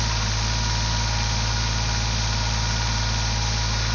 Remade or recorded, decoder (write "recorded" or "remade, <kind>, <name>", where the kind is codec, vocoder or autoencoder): recorded